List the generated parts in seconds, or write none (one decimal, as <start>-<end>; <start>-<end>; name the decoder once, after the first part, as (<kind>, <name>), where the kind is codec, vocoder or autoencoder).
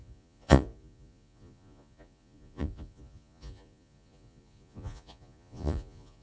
0.0-6.2 (vocoder, Vocos)